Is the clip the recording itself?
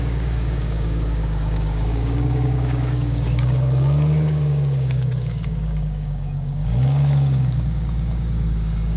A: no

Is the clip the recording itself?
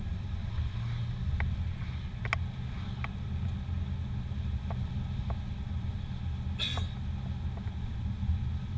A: yes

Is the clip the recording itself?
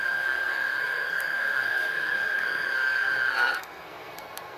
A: no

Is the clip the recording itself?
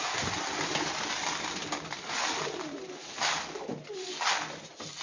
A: yes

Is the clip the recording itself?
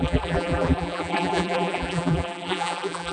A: no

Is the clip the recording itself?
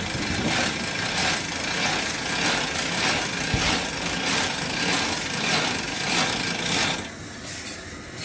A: yes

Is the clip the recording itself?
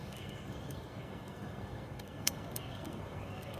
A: no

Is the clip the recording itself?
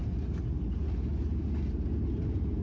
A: yes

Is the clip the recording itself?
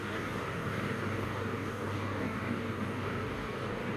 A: no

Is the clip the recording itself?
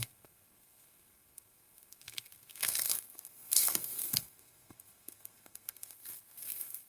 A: no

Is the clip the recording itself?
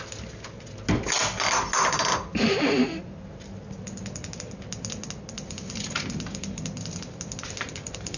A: yes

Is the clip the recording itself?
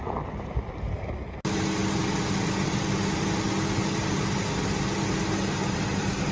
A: yes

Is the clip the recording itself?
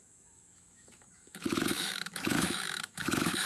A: no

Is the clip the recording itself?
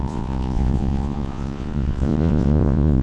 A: no